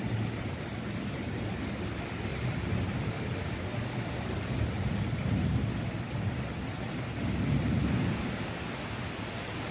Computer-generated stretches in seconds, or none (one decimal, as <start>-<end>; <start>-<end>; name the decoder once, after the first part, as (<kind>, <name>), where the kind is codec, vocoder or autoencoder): none